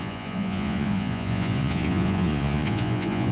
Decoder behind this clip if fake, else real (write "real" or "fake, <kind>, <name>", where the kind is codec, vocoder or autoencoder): fake, vocoder, Vocos